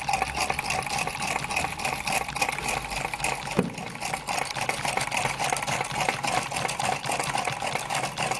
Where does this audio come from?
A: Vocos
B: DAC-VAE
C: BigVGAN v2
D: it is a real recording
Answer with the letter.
D